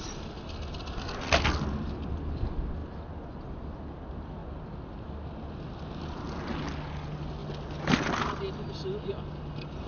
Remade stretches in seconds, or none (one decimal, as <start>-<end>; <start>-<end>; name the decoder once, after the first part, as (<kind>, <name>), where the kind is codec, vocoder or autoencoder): none

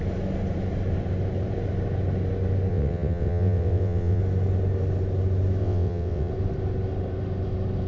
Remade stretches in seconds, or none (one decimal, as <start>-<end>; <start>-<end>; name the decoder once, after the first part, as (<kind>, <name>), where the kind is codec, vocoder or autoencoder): 2.7-4.2 (vocoder, WaveNeXt); 5.6-6.3

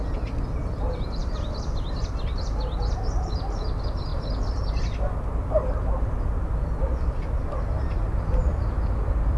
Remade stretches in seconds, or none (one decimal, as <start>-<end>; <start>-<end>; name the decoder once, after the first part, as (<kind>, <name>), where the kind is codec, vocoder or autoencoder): 1.2-2.3 (vocoder, BigVGAN v2)

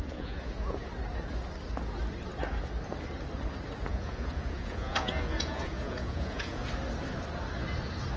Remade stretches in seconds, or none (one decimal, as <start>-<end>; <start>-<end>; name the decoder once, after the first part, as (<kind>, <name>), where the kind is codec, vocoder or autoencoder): 0.0-0.9 (vocoder, Vocos); 3.9-6.6